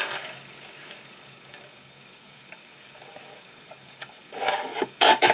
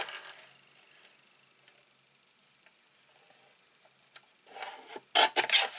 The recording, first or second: second